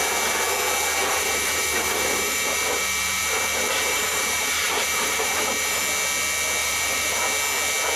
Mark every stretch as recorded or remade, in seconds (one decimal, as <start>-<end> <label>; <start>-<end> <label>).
0.0-1.0 recorded; 1.0-5.8 remade; 5.8-6.6 recorded; 6.6-7.2 remade; 7.2-8.0 recorded